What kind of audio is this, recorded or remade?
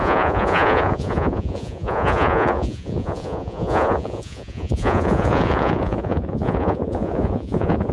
remade